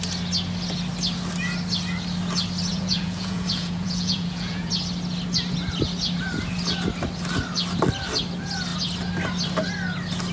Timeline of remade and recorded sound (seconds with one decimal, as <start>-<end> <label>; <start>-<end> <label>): 0.0-2.7 recorded; 2.7-4.7 remade; 4.7-10.3 recorded